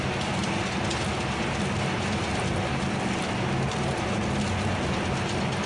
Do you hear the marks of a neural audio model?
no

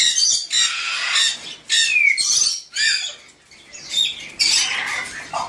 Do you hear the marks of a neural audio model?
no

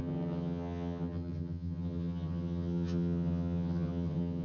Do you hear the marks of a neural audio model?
yes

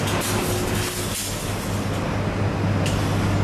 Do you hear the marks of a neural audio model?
no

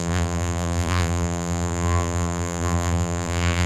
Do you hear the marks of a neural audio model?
yes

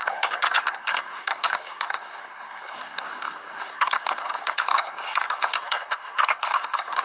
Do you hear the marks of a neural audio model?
yes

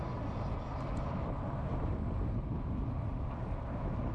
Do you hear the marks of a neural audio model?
no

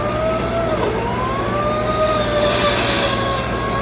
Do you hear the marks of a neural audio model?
no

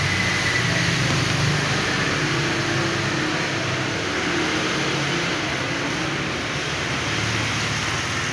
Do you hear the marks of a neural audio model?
no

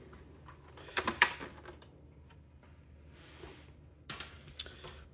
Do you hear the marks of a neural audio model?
no